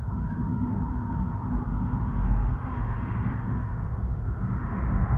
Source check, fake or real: fake